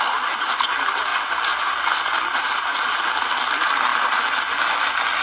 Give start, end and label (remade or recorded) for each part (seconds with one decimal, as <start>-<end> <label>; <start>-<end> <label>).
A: 0.0-5.2 recorded